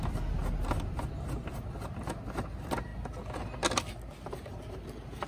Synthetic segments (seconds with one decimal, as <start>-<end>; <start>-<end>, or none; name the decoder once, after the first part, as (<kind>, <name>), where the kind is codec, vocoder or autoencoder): none